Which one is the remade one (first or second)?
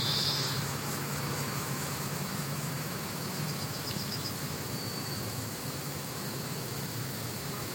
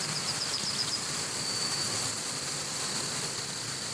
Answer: first